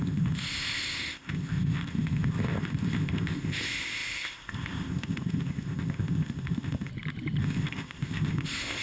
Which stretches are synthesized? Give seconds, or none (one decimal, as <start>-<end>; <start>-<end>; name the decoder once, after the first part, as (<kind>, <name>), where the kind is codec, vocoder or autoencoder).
0.0-6.9 (codec, ZipCodec); 7.4-8.8